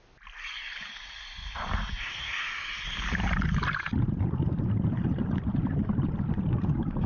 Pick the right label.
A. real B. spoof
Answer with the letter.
A